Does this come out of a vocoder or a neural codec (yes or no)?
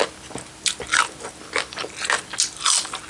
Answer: no